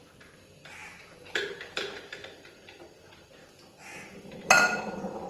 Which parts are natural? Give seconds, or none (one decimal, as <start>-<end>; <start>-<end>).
0.8-1.5; 3.4-4.1